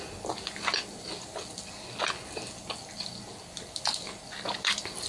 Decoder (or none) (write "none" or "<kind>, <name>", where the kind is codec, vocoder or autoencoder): none